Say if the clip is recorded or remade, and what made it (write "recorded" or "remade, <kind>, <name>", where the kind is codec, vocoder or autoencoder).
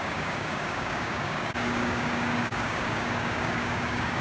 remade, codec, DAC